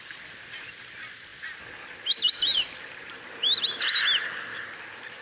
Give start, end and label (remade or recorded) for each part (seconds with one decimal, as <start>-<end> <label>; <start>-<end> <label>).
0.0-5.2 recorded